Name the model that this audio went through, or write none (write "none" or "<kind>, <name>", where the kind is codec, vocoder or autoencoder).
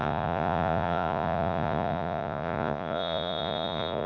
vocoder, Vocos